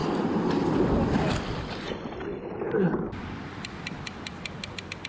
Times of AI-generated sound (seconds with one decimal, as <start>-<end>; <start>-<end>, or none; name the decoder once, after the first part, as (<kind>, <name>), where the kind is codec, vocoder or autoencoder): none